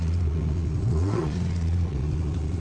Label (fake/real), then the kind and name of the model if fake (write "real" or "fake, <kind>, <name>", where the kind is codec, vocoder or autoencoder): fake, vocoder, Vocos